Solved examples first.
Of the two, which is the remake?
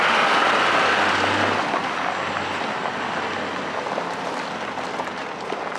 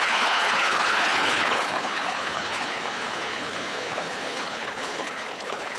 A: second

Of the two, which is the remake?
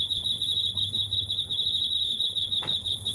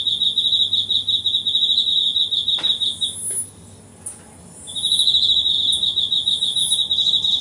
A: first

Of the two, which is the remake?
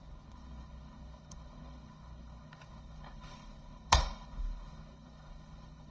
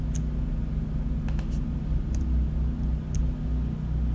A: first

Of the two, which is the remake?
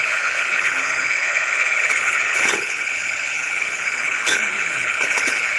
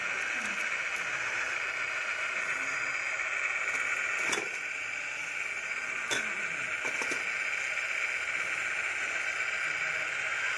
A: first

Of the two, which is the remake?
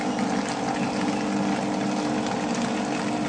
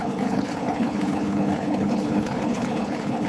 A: second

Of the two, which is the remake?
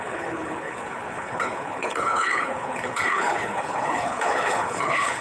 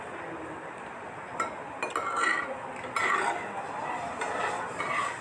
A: first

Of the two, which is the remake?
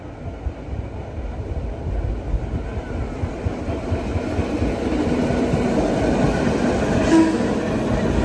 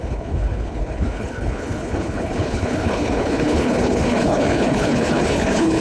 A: second